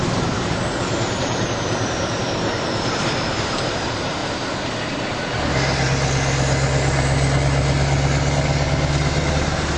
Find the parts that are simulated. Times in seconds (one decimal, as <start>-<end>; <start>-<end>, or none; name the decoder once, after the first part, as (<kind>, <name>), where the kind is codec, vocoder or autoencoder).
0.0-4.2 (vocoder, BigVGAN v2); 9.3-9.8